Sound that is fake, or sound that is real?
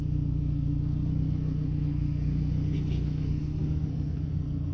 fake